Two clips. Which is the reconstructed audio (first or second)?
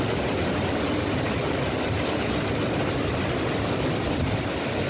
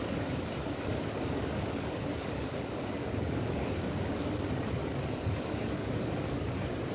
second